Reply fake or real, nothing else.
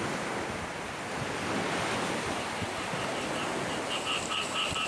real